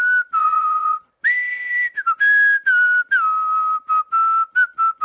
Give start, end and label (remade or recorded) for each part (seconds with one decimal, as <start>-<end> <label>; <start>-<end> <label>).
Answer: 0.0-0.4 recorded; 0.4-1.0 remade; 1.0-5.0 recorded